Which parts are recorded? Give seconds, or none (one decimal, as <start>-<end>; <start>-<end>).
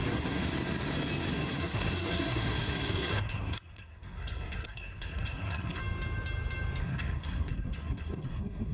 0.4-1.3; 5.8-6.8